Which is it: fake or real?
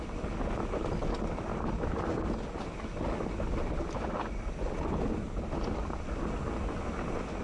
real